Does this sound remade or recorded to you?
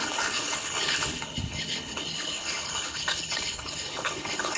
remade